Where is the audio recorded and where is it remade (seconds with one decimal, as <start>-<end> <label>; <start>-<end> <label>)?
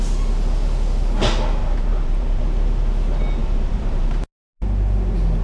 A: 0.0-1.6 recorded; 1.6-2.4 remade; 2.4-3.4 recorded; 3.4-4.1 remade; 4.1-5.4 recorded